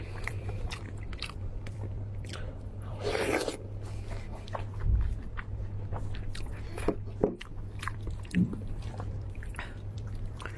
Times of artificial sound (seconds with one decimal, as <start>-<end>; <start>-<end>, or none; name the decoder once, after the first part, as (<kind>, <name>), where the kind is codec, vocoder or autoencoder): 0.0-3.5 (vocoder, BigVGAN v2); 7.2-10.6